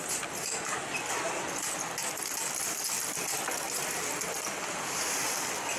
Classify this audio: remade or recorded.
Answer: recorded